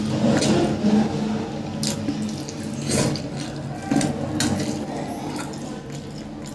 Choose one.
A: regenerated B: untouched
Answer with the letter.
B